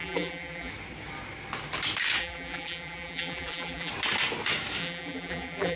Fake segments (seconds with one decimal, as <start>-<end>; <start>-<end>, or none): 0.0-0.7; 2.2-3.9; 4.8-5.8